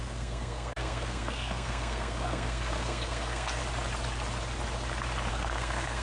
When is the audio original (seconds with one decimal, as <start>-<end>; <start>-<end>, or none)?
3.6-5.3